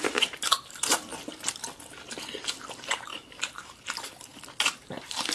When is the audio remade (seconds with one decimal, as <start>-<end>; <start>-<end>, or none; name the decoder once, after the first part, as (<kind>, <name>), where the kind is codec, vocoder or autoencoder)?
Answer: 0.0-1.1 (vocoder, BigVGAN v2); 2.5-4.3; 4.8-5.3